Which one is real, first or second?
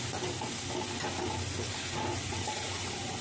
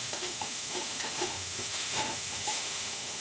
first